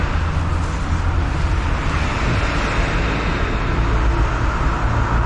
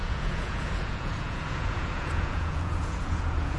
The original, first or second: first